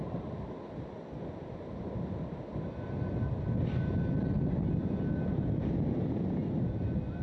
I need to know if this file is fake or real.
real